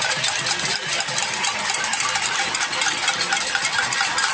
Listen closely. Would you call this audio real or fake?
real